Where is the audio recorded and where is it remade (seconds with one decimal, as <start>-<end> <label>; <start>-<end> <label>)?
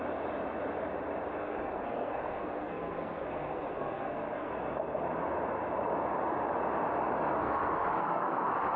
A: 0.0-1.4 recorded; 1.4-4.5 remade; 4.5-7.4 recorded; 7.4-8.8 remade